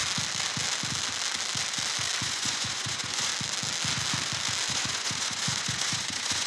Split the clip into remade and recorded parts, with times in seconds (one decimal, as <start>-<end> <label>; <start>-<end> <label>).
0.0-2.2 recorded; 2.2-3.3 remade; 3.3-4.7 recorded; 4.7-6.5 remade